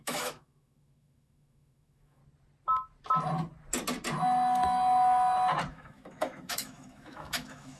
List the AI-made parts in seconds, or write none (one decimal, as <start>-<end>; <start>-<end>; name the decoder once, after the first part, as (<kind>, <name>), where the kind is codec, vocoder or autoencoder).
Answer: 0.0-2.2 (autoencoder, DAC-VAE); 5.7-7.8